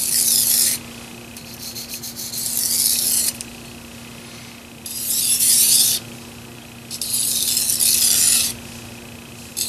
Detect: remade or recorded recorded